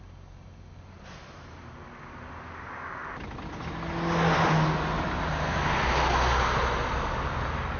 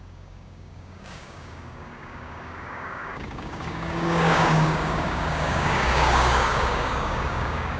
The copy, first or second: second